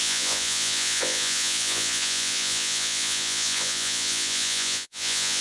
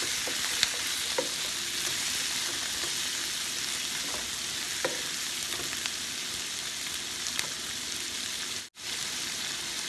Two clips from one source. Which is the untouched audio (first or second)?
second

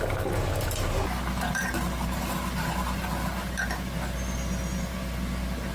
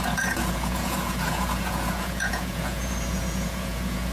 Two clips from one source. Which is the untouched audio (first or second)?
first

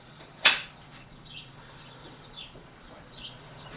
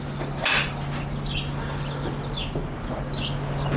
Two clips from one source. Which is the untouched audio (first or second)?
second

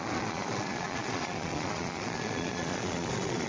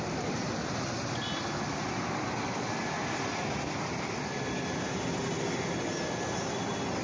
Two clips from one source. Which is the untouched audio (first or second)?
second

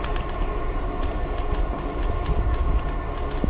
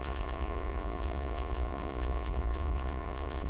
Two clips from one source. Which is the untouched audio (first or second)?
first